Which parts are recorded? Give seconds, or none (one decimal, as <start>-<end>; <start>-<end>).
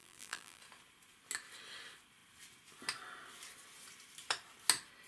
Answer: 0.6-5.1